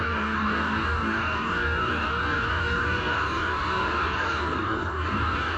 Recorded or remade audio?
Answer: remade